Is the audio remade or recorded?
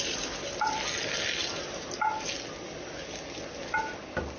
recorded